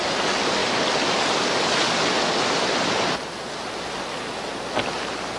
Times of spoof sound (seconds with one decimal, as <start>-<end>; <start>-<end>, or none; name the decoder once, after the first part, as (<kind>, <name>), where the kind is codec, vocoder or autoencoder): 0.6-3.5 (vocoder, BigVGAN v2)